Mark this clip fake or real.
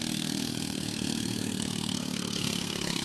fake